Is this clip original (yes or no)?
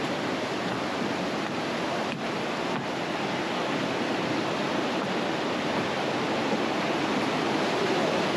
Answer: yes